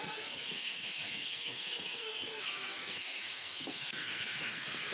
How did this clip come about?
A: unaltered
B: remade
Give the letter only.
B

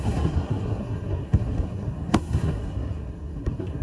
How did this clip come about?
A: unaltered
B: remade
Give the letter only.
B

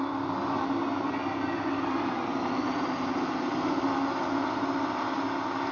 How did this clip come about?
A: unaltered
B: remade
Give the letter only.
A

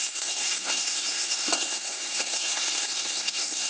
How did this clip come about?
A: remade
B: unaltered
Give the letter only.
A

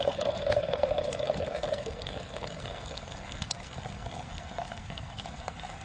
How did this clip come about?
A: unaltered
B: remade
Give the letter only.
B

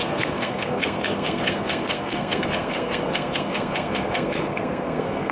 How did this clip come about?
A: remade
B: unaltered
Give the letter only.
A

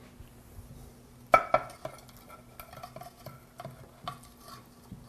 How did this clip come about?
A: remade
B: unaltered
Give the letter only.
B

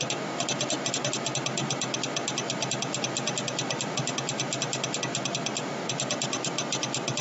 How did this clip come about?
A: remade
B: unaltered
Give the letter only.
B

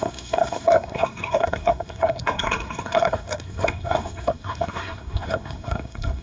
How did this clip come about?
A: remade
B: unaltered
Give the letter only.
A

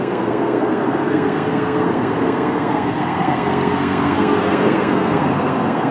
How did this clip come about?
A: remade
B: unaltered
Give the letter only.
A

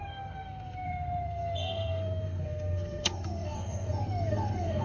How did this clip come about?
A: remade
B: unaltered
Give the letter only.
A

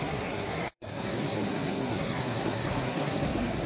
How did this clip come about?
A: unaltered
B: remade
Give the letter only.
B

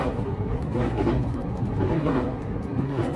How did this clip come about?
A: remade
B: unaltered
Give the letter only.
A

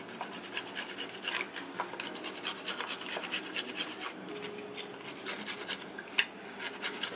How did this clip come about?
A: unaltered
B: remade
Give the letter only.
A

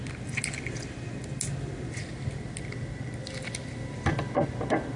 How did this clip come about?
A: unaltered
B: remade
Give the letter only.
A